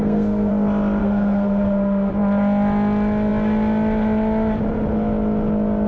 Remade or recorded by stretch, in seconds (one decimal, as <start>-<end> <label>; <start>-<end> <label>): 0.0-0.5 remade; 0.5-1.0 recorded; 1.0-2.1 remade; 2.1-5.9 recorded